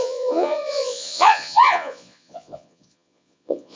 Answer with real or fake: fake